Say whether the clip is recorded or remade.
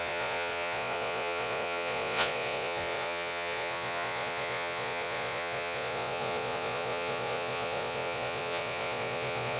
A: remade